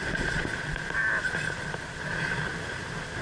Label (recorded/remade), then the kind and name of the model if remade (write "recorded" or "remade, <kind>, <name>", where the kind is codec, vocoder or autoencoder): recorded